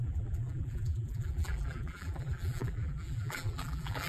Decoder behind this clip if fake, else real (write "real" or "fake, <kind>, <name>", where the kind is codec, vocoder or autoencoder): fake, vocoder, BigVGAN v2